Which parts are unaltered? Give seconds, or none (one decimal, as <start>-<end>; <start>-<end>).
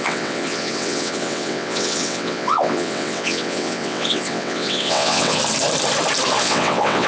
5.4-6.4